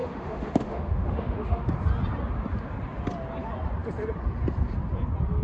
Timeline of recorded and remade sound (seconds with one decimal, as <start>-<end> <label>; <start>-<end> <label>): 0.0-1.7 remade; 1.7-5.4 recorded